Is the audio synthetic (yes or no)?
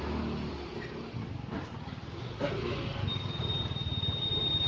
no